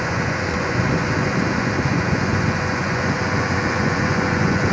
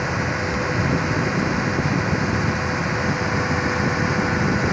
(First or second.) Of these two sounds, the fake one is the first